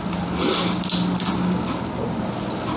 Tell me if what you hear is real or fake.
real